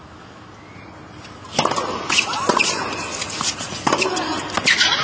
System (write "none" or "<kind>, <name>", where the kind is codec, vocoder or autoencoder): none